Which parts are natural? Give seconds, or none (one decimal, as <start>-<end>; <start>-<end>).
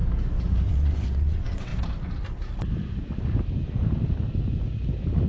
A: 0.0-0.7; 1.7-5.3